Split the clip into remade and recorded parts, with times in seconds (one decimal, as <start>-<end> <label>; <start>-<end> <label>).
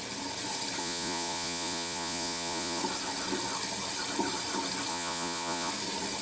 0.0-0.8 recorded; 0.8-2.8 remade; 2.8-4.9 recorded; 4.9-5.7 remade; 5.7-6.2 recorded